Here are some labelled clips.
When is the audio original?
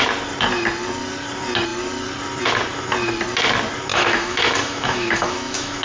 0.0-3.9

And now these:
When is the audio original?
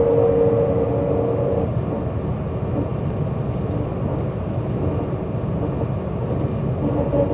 0.0-7.3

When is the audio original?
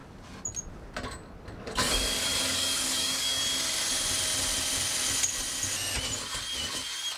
0.0-1.6; 3.4-7.2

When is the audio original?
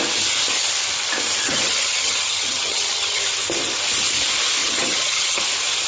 0.0-1.4; 3.2-4.6; 5.4-5.9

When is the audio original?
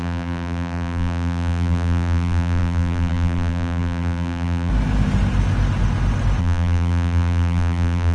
4.7-6.4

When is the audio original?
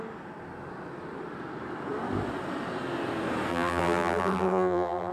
0.0-3.5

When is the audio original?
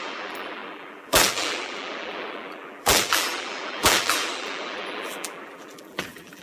none